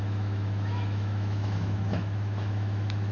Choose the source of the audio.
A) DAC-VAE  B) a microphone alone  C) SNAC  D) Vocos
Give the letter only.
A